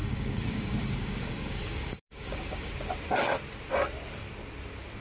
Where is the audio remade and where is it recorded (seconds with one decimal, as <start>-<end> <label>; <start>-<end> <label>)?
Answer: 0.0-2.7 remade; 2.7-5.0 recorded